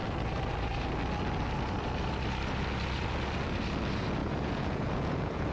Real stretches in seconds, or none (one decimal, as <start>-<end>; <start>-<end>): 0.0-4.2